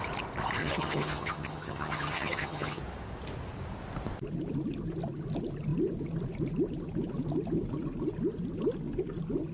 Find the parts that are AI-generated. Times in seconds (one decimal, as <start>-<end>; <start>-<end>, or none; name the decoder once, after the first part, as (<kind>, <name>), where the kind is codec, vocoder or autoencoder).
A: 0.6-2.8 (vocoder, HiFi-GAN)